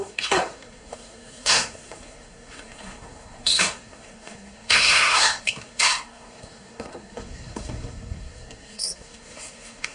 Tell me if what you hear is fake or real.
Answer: fake